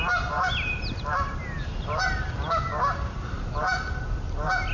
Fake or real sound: real